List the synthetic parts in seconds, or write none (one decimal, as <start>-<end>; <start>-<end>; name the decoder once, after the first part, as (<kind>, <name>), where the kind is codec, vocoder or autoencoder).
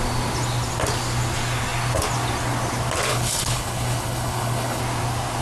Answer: 3.1-4.8 (codec, HILCodec)